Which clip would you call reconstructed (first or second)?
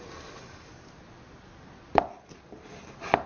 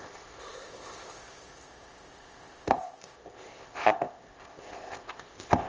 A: second